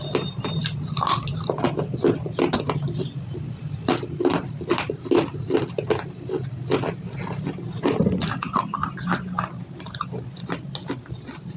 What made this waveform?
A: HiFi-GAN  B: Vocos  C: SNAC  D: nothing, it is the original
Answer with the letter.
D